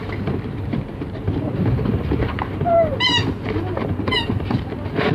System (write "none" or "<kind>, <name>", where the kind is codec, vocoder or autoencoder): vocoder, BigVGAN v2